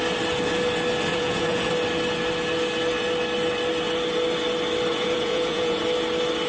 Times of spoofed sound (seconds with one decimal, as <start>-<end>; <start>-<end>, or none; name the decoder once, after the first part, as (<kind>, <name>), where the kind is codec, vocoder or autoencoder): 1.1-1.7 (vocoder, Vocos); 4.9-5.8